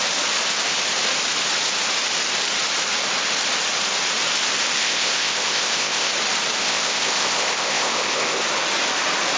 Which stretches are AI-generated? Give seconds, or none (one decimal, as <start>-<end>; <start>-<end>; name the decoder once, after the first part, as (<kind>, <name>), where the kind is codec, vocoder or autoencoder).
4.8-6.1 (codec, ZipCodec); 6.6-8.4